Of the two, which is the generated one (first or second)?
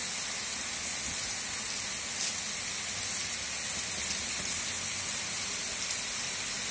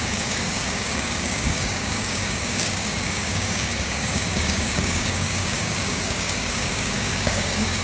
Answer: second